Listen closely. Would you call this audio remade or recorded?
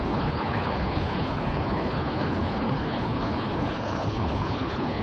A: remade